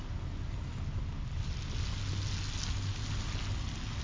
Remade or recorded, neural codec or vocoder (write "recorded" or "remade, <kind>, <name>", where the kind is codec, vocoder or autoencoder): recorded